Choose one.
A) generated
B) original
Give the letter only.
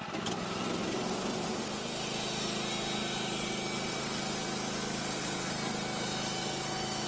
B